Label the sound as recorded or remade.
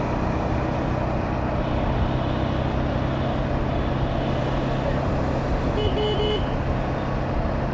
recorded